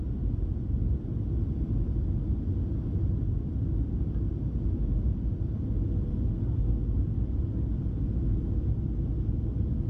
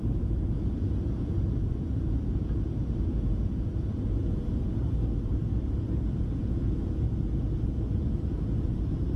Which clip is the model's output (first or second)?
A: second